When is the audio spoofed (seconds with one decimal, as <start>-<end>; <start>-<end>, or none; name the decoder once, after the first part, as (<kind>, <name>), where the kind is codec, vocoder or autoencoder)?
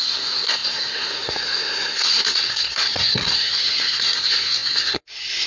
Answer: 0.0-5.5 (codec, SNAC)